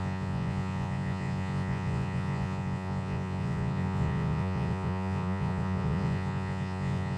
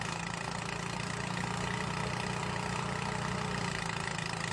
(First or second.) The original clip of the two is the second